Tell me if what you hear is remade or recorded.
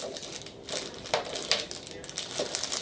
recorded